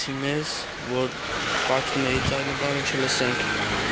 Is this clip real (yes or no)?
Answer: no